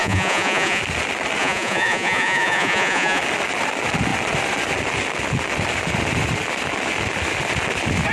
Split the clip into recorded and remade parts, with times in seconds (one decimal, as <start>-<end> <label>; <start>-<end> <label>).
0.0-0.8 remade; 0.8-1.4 recorded; 1.4-3.2 remade; 3.2-8.1 recorded